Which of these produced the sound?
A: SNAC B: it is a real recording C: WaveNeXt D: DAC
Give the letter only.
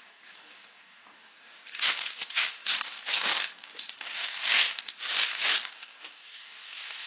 D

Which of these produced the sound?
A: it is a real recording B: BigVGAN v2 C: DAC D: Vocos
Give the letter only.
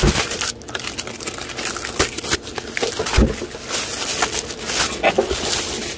A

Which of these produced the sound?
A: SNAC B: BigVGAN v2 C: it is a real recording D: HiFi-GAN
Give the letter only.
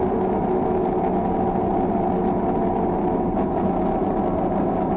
C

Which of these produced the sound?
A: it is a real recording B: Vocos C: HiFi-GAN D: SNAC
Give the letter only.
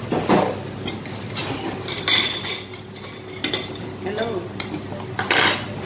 A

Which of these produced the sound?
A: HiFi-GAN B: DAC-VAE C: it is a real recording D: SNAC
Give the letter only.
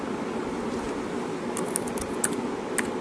C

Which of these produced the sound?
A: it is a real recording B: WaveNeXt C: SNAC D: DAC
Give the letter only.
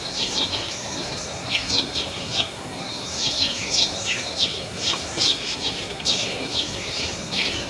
C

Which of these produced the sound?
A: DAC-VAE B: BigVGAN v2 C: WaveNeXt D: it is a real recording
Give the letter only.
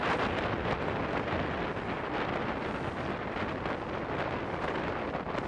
D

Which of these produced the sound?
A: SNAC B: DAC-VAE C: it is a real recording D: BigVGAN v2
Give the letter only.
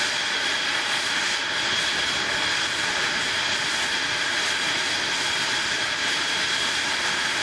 C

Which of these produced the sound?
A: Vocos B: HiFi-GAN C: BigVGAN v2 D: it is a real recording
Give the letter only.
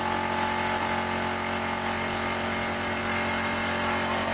D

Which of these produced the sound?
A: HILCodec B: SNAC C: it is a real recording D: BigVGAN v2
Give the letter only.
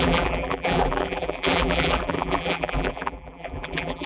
D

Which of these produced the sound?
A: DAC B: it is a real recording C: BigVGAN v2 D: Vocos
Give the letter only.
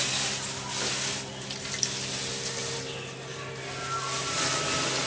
B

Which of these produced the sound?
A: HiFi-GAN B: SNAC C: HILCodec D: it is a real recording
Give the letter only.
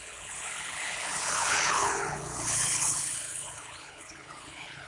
C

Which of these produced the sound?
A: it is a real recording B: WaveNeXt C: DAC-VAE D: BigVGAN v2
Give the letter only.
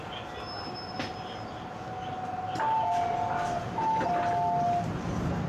A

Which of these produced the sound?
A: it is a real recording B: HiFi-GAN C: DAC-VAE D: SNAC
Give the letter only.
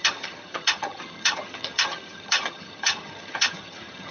B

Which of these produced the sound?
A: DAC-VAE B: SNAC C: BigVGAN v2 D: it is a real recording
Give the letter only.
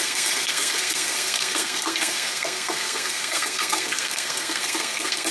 B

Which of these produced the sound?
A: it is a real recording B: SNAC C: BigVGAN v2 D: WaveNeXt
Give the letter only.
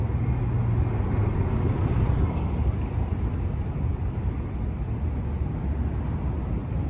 A